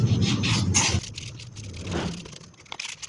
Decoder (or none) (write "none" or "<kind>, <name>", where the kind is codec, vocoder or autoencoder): none